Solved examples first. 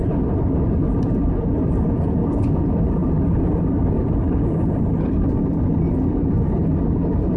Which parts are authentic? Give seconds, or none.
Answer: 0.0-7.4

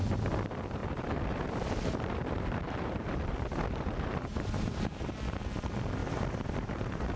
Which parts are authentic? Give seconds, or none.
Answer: 0.0-0.8; 5.1-6.0